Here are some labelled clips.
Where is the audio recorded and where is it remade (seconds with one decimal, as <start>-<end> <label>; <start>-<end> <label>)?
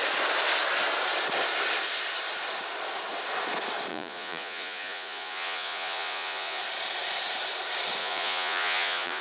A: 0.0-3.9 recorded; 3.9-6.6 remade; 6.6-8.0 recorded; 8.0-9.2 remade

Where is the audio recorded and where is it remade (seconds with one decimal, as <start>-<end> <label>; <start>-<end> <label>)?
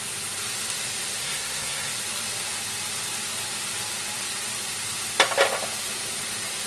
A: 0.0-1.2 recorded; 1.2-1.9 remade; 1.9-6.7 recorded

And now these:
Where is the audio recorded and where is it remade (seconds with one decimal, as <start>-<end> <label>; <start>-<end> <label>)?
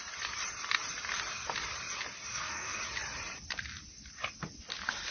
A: 0.0-2.3 recorded; 2.3-2.8 remade; 2.8-5.1 recorded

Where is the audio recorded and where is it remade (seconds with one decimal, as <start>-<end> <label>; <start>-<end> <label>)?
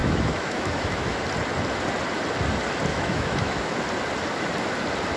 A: 0.0-1.2 remade; 1.2-2.9 recorded; 2.9-3.8 remade; 3.8-5.2 recorded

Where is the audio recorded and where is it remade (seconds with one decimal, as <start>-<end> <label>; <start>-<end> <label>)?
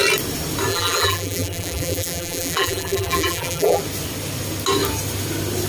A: 0.0-0.7 recorded; 0.7-3.8 remade; 3.8-5.7 recorded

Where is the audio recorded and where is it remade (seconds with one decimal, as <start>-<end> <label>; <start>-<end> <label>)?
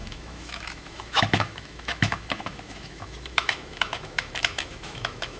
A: 0.0-5.4 remade